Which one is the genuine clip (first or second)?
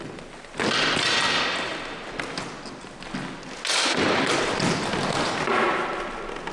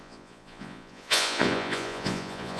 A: first